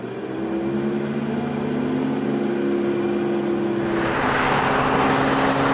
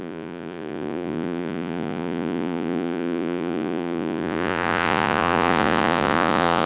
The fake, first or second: second